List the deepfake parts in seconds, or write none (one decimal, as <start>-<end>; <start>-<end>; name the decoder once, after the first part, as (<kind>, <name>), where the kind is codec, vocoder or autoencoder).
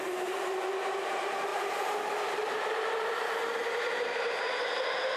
none